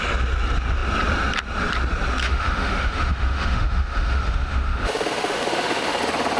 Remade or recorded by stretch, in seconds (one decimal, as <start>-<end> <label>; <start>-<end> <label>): 0.0-2.2 recorded; 2.2-6.0 remade; 6.0-6.4 recorded